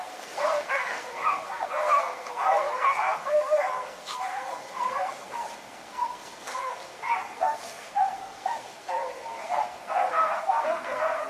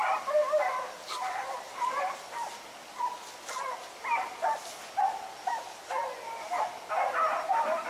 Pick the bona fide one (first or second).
second